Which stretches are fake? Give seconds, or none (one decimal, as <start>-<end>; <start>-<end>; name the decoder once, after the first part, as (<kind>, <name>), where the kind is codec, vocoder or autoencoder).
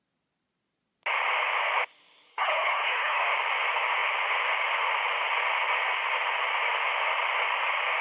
2.3-3.2 (codec, HILCodec)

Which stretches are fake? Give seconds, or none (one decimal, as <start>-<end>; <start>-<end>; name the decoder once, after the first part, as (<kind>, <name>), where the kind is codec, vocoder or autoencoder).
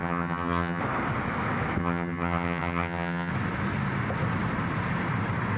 0.0-0.8 (vocoder, HiFi-GAN); 1.8-3.3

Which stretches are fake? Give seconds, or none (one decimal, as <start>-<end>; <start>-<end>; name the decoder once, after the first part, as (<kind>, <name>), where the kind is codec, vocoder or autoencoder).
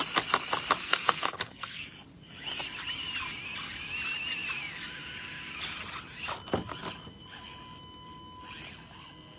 0.8-1.8 (codec, SNAC)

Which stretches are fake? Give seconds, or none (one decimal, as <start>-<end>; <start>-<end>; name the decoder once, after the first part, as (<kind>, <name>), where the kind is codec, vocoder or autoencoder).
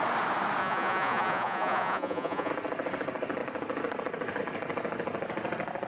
0.6-2.5 (vocoder, Vocos)